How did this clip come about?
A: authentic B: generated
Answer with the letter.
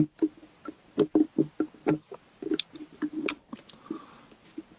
A